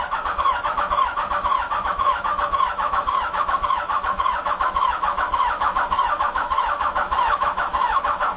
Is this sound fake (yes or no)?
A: yes